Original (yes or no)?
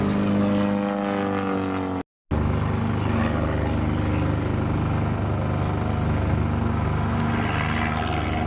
yes